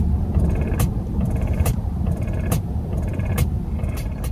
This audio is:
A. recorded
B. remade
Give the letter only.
B